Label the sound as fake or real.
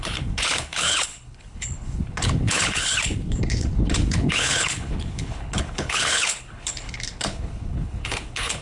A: fake